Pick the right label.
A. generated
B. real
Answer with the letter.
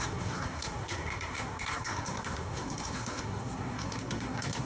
A